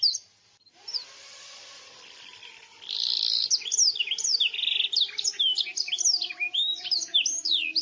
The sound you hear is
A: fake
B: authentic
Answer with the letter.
B